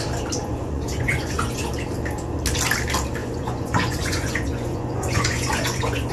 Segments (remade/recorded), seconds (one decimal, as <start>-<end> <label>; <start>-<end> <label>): 0.0-0.4 recorded; 0.4-1.7 remade; 1.7-3.2 recorded; 3.2-6.1 remade